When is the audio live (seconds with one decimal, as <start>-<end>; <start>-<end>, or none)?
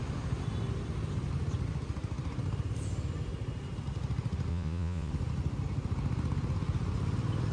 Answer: 0.0-4.5; 5.1-7.5